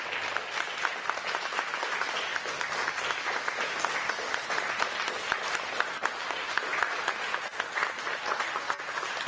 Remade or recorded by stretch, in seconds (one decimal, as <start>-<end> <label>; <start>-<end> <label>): 0.0-9.3 recorded